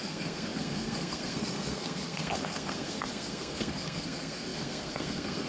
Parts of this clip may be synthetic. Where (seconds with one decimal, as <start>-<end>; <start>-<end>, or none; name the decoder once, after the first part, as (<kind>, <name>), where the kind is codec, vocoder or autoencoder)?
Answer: 0.0-5.5 (codec, SNAC)

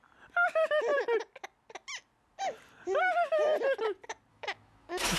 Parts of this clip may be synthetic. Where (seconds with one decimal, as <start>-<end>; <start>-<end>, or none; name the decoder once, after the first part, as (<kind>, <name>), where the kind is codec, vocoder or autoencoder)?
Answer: 4.3-5.2 (autoencoder, DAC-VAE)